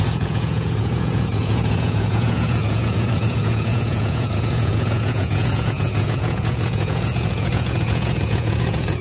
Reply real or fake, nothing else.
fake